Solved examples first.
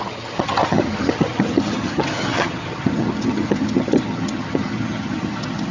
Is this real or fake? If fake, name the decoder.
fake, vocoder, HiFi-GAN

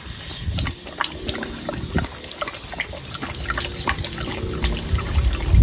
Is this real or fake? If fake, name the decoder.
real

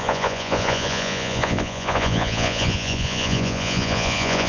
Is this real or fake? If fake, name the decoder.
fake, vocoder, Vocos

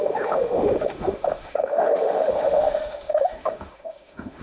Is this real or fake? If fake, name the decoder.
fake, autoencoder, DAC-VAE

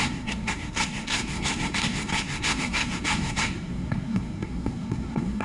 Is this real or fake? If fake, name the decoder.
fake, codec, SNAC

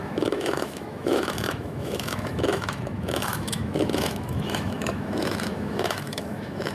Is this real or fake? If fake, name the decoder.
fake, autoencoder, DAC-VAE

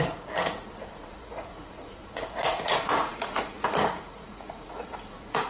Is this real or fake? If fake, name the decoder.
fake, vocoder, Vocos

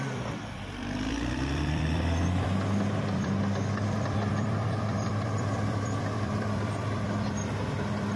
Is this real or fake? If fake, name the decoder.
fake, vocoder, BigVGAN v2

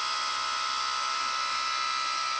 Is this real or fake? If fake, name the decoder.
real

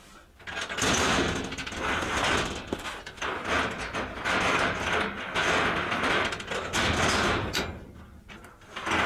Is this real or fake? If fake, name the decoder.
real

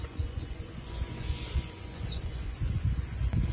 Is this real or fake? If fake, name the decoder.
fake, vocoder, Vocos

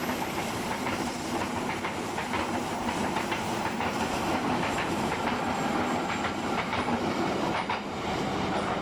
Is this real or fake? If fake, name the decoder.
fake, vocoder, BigVGAN v2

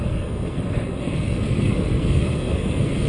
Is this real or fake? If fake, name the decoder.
fake, codec, SNAC